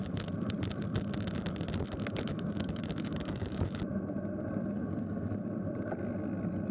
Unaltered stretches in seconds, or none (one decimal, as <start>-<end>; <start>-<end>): 0.0-2.3; 3.8-6.7